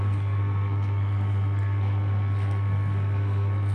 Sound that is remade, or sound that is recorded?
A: remade